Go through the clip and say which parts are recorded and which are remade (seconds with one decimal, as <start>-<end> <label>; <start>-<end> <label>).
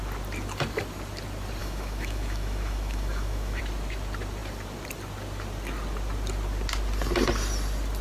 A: 0.0-1.6 recorded; 1.6-3.6 remade; 3.6-8.0 recorded